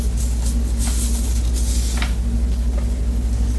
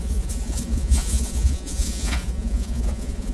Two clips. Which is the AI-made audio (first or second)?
second